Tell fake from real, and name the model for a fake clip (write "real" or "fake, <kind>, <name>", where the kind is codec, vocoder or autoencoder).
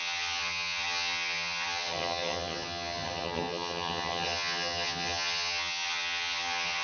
fake, vocoder, HiFi-GAN